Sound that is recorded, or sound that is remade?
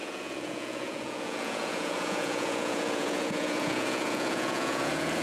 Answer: remade